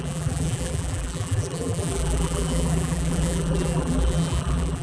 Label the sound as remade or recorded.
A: remade